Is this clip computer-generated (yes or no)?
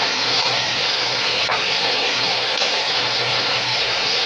yes